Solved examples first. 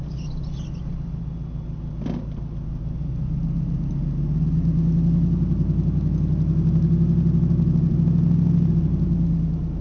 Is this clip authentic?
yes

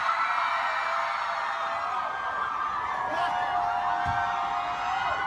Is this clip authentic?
yes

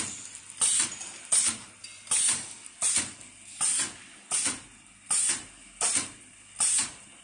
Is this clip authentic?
yes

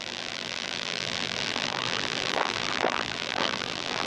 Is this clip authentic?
no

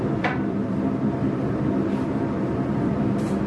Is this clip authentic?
no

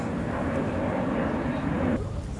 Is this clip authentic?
yes